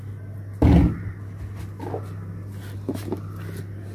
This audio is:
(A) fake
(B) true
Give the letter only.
B